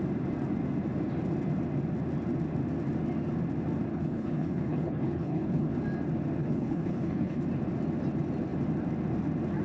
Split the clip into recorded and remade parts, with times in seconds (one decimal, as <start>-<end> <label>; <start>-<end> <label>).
0.0-3.9 recorded; 3.9-5.7 remade; 5.7-6.4 recorded; 6.4-7.4 remade; 7.4-9.6 recorded